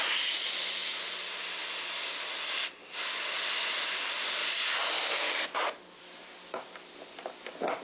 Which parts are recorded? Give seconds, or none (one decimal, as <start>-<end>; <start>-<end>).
0.0-7.8